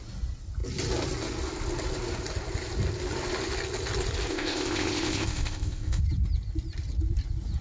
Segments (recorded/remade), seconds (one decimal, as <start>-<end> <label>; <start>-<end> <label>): 0.0-4.3 recorded; 4.3-6.0 remade; 6.0-7.6 recorded